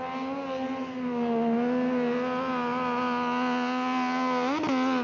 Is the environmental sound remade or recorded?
recorded